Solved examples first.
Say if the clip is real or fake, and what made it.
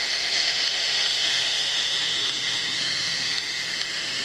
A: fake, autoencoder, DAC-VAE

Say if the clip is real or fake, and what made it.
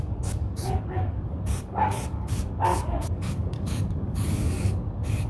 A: fake, codec, DAC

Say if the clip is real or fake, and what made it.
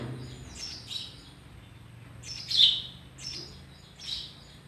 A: real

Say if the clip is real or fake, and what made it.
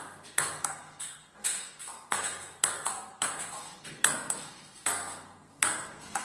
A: fake, codec, SNAC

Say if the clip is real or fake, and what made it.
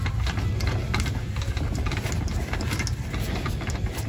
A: real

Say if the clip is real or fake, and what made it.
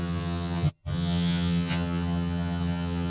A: fake, vocoder, HiFi-GAN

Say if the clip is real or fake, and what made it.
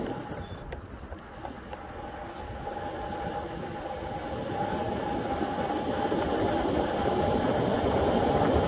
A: real